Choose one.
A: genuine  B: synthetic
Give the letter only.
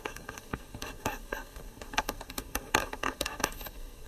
B